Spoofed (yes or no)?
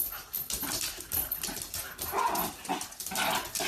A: yes